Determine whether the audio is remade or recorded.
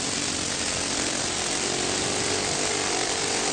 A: remade